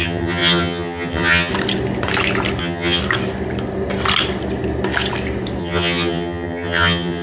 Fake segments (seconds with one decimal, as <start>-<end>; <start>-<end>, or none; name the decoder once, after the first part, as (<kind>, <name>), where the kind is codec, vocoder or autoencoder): 0.0-1.5 (vocoder, HiFi-GAN); 2.6-3.0; 5.6-7.2